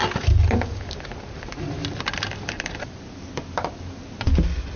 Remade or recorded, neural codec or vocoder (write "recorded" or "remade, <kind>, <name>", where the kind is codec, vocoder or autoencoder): recorded